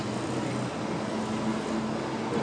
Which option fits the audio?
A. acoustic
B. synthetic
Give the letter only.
A